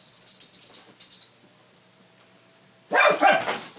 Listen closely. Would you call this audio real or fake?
real